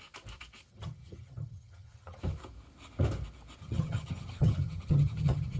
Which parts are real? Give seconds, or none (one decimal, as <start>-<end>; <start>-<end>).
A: 0.0-0.7; 2.2-3.6